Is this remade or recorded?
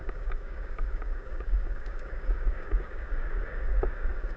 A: remade